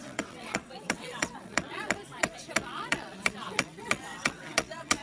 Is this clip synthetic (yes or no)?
yes